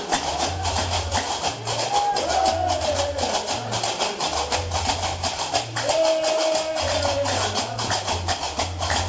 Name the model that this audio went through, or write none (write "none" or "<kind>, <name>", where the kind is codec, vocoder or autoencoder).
none